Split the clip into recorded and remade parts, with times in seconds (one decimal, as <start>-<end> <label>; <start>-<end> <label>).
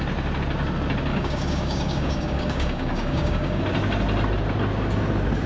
0.0-1.1 recorded; 1.1-3.6 remade; 3.6-5.5 recorded